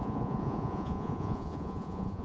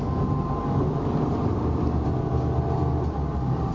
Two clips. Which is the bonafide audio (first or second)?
second